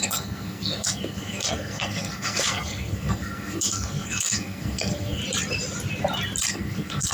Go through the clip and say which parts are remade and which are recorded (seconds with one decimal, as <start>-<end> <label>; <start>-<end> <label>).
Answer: 0.0-5.2 remade; 5.2-6.5 recorded; 6.5-7.1 remade